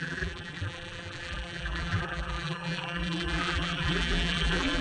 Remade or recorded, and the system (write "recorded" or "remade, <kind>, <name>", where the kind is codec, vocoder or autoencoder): remade, vocoder, BigVGAN v2